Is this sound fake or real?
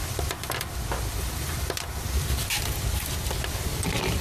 real